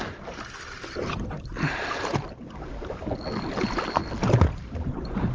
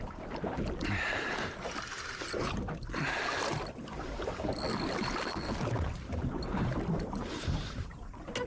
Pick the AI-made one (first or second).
first